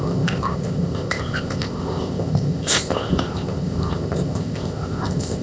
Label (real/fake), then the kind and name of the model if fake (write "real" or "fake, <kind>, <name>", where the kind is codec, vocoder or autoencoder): fake, codec, ZipCodec